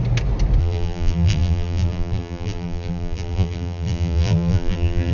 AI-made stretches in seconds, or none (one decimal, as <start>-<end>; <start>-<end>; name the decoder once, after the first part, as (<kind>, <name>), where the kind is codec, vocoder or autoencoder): 0.6-5.1 (vocoder, BigVGAN v2)